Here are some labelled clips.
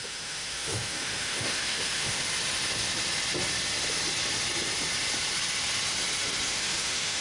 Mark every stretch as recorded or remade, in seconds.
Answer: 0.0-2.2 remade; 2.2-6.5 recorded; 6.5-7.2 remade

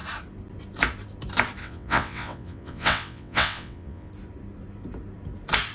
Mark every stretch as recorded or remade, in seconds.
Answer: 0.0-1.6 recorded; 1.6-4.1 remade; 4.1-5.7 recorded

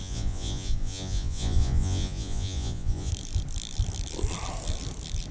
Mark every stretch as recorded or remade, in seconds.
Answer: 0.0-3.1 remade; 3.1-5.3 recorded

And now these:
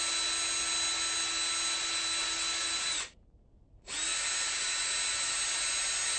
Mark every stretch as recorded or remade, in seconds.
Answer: 0.0-6.2 recorded

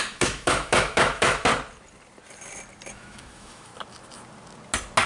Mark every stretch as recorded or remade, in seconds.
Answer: 0.0-1.5 remade; 1.5-2.9 recorded; 2.9-3.7 remade; 3.7-5.1 recorded

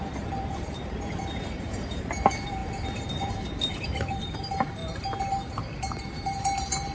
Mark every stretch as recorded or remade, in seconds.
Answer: 0.0-4.8 remade; 4.8-6.0 recorded; 6.0-6.9 remade